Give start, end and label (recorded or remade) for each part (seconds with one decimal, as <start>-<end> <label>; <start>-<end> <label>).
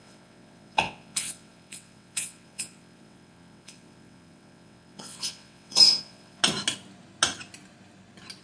0.0-6.4 remade; 6.4-8.4 recorded